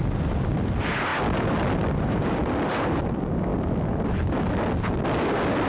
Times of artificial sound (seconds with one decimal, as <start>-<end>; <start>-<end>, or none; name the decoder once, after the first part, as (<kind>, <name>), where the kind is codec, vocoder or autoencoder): 0.0-1.1 (vocoder, BigVGAN v2); 1.9-3.5; 5.2-5.7